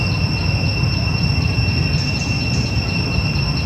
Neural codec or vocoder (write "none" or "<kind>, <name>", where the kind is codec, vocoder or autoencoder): none